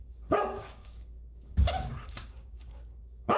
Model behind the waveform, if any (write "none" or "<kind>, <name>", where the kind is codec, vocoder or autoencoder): codec, DAC